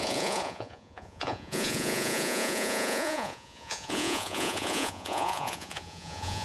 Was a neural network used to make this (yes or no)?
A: yes